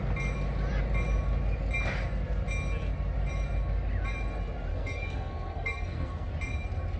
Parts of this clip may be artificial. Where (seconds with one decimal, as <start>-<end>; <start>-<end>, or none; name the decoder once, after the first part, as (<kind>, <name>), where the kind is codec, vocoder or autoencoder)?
4.7-6.3 (codec, SNAC)